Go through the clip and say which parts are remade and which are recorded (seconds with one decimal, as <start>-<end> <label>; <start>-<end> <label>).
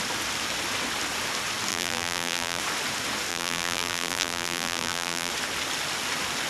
0.0-1.7 recorded; 1.7-2.6 remade; 2.6-3.3 recorded; 3.3-5.3 remade; 5.3-6.5 recorded